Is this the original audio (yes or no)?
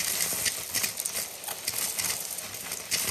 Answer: yes